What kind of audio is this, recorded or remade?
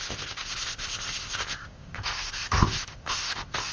remade